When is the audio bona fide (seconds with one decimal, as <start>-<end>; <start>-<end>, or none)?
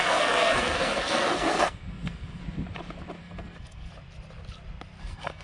2.4-3.2; 3.9-5.0